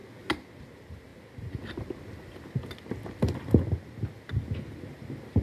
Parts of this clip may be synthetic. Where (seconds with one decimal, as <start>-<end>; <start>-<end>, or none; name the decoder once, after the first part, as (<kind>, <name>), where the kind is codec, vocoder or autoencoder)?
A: none